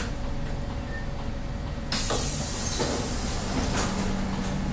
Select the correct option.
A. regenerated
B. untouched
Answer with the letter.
B